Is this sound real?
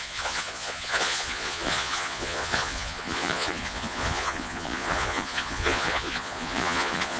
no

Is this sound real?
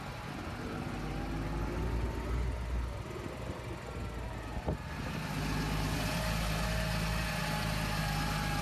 yes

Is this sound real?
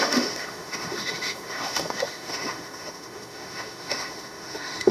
no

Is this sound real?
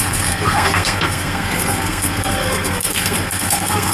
no